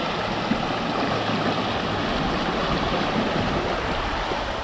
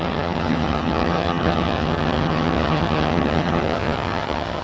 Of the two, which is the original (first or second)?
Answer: first